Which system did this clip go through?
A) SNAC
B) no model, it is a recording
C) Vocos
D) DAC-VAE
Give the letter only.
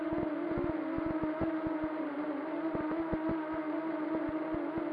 B